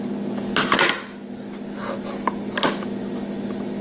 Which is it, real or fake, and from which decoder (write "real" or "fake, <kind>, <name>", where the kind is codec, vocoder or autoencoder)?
real